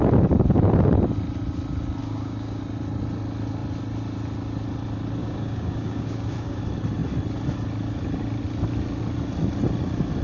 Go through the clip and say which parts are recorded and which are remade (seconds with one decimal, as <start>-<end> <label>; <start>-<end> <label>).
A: 0.0-2.0 recorded; 2.0-2.6 remade; 2.6-5.2 recorded; 5.2-6.6 remade; 6.6-10.2 recorded